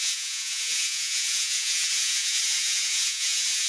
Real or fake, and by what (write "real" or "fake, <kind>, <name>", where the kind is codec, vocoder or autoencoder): fake, vocoder, Vocos